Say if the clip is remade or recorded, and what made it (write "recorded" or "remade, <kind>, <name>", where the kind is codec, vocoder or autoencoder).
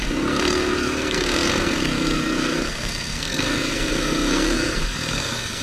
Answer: remade, codec, SNAC